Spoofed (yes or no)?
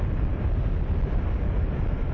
no